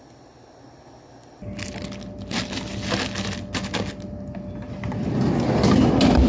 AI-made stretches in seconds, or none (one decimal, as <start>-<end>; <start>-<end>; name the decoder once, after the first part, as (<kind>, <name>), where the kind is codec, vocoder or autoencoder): none